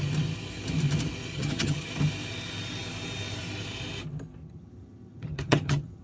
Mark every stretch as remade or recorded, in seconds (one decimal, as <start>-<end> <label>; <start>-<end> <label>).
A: 0.0-1.3 recorded; 1.3-1.9 remade; 1.9-4.4 recorded; 4.4-6.0 remade